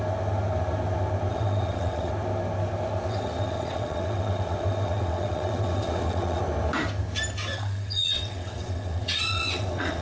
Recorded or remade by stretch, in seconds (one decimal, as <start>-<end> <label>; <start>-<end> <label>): 0.0-1.3 recorded; 1.3-2.1 remade; 2.1-3.1 recorded; 3.1-6.4 remade; 6.4-7.5 recorded; 7.5-10.0 remade